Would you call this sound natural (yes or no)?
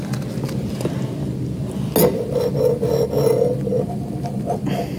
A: yes